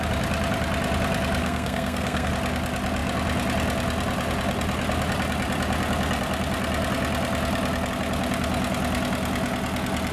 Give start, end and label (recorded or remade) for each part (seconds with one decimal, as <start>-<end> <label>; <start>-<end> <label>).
0.0-1.4 recorded; 1.4-2.3 remade; 2.3-10.1 recorded